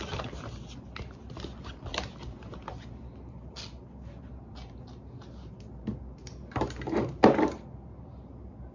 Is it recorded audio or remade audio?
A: recorded